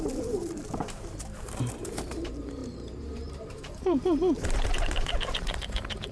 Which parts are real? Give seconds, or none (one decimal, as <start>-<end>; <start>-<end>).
none

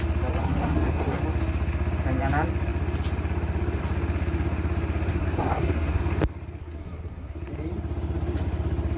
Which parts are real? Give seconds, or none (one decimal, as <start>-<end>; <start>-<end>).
0.0-0.4; 1.2-5.1; 6.0-6.6; 7.5-9.0

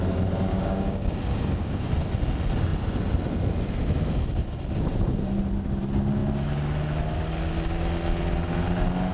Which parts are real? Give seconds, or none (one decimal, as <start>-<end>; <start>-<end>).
0.0-0.5; 1.9-9.1

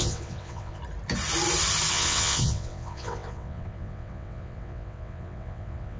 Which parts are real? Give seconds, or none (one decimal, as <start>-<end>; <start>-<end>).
0.8-1.9

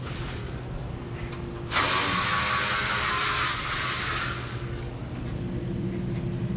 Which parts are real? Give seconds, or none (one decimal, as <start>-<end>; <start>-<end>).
0.4-4.4; 5.0-6.6